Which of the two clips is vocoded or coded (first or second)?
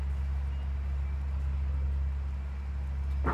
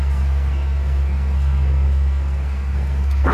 second